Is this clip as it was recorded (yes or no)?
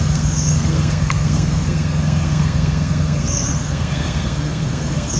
no